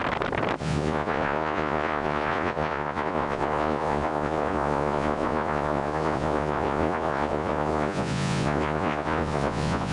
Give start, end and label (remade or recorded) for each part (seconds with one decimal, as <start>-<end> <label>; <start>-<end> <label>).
0.0-0.6 recorded; 0.6-9.9 remade